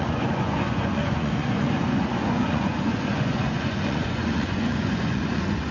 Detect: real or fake fake